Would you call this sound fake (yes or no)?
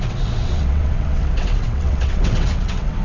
yes